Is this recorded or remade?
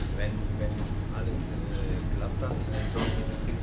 recorded